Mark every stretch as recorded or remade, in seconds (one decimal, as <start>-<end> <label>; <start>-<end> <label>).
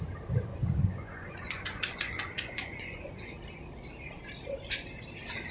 0.0-0.5 recorded; 0.5-3.4 remade; 3.4-5.5 recorded